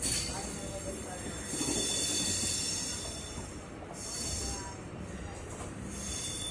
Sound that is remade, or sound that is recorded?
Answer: recorded